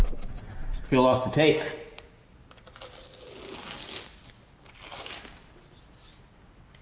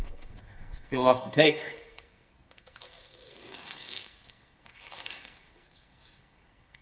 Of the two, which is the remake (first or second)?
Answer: second